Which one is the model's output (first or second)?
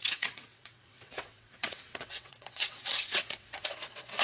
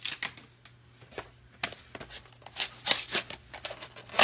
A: first